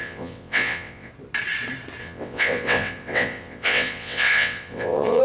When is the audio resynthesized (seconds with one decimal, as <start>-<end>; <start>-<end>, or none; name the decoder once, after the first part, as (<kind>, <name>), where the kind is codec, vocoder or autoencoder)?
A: 0.0-1.1 (vocoder, WaveNeXt); 2.0-5.2